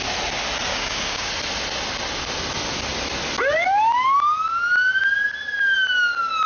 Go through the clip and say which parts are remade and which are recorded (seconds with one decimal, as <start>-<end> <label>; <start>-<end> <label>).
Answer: 0.0-0.7 recorded; 0.7-1.3 remade; 1.3-6.5 recorded